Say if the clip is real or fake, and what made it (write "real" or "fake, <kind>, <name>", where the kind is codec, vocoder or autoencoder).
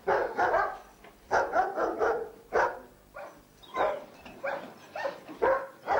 real